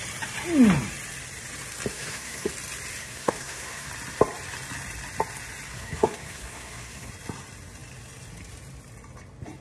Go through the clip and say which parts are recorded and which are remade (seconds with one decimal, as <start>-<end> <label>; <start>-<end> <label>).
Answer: 0.0-1.9 recorded; 1.9-2.5 remade; 2.5-3.0 recorded; 3.0-3.9 remade; 3.9-5.7 recorded; 5.7-7.1 remade; 7.1-9.6 recorded